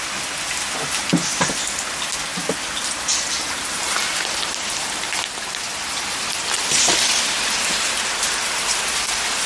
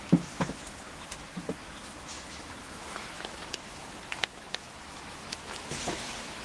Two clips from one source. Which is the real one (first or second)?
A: first